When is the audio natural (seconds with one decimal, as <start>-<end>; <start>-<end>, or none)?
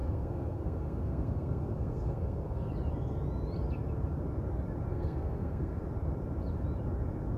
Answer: 2.7-4.9; 5.8-7.4